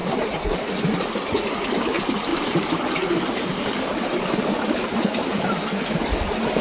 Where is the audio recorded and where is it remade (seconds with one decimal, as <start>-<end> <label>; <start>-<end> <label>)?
0.0-0.7 remade; 0.7-2.3 recorded; 2.3-5.4 remade; 5.4-6.6 recorded